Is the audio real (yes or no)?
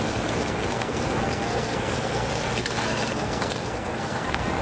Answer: no